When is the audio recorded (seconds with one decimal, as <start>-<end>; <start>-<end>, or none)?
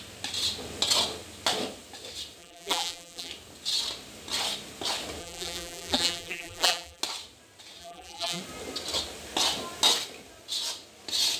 0.0-2.4; 3.3-5.2; 7.0-7.8; 8.4-11.4